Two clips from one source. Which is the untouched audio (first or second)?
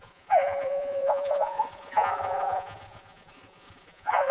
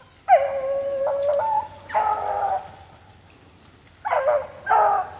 second